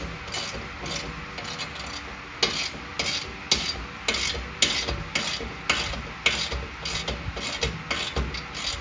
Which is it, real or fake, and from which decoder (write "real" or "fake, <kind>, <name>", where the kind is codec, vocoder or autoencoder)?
real